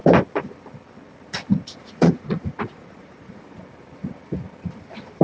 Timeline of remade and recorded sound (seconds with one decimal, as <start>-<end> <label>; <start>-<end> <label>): 0.0-1.8 recorded; 1.8-3.6 remade; 3.6-5.2 recorded